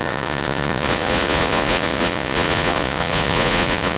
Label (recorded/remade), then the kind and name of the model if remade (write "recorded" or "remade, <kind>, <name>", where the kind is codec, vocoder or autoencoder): remade, vocoder, Vocos